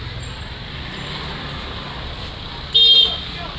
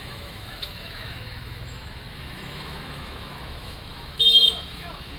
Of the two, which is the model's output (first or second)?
second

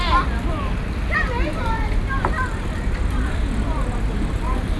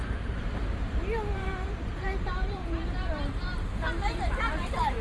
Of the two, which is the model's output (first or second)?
second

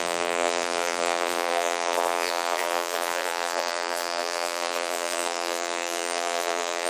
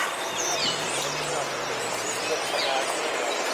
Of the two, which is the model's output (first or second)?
first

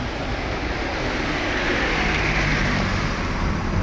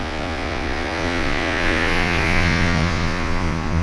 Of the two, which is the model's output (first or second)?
second